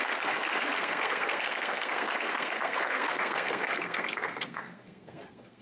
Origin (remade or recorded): remade